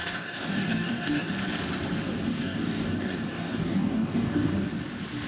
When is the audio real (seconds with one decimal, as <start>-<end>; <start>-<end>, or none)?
1.3-2.3; 4.5-5.3